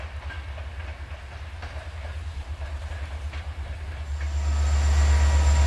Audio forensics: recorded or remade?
recorded